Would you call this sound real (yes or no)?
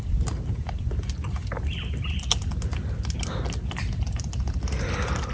yes